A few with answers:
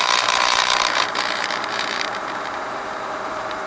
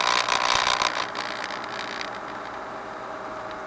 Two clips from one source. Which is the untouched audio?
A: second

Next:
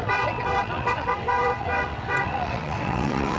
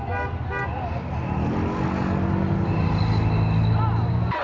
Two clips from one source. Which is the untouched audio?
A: second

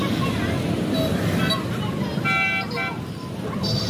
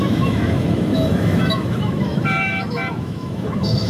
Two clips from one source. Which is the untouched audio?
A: first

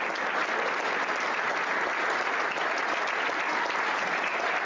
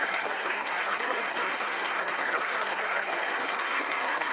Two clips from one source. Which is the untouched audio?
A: first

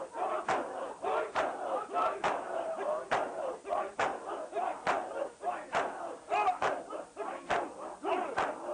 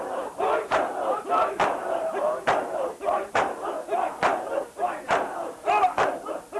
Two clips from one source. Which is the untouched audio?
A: first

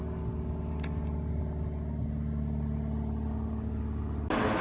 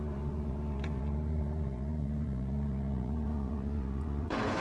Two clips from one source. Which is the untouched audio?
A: first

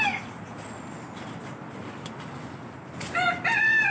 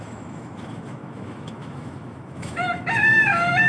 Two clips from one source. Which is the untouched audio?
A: first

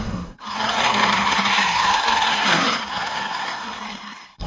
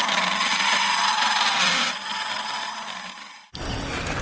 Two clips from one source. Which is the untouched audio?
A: second